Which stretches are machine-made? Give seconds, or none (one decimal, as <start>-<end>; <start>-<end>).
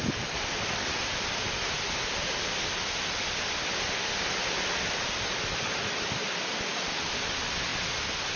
none